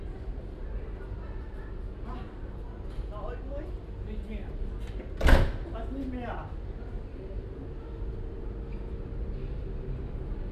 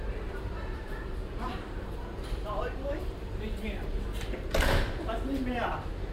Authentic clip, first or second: first